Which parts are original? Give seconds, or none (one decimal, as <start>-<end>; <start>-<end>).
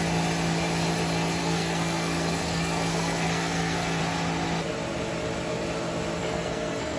0.0-1.4; 4.0-6.2